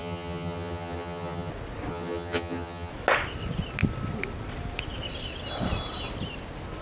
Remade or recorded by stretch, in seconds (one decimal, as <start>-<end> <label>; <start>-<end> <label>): 0.0-1.5 remade; 1.5-1.9 recorded; 1.9-2.9 remade; 2.9-6.8 recorded